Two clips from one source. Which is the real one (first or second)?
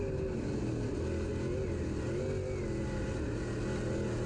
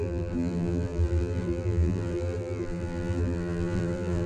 first